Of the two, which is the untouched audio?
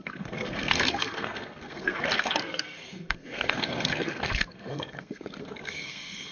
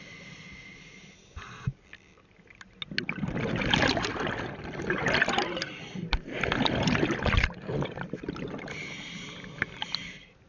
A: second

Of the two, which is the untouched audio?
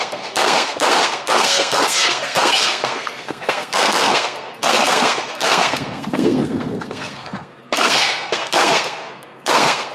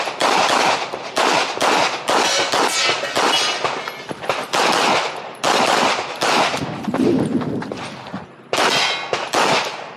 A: second